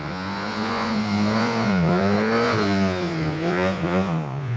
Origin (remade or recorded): remade